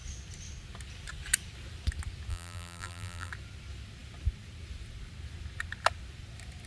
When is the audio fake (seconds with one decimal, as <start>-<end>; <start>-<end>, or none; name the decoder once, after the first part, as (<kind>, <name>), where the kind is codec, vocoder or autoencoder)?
2.3-3.3 (vocoder, BigVGAN v2)